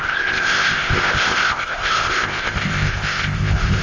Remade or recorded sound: remade